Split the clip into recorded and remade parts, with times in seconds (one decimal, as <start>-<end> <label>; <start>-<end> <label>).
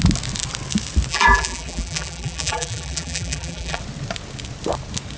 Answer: 0.0-1.1 recorded; 1.1-3.8 remade; 3.8-5.2 recorded